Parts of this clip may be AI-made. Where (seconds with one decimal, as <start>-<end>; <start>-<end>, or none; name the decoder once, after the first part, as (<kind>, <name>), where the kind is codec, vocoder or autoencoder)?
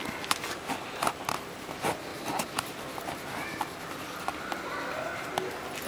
2.1-3.0 (vocoder, BigVGAN v2)